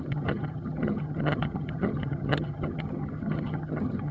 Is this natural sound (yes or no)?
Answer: no